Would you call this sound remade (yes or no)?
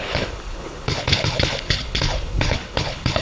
yes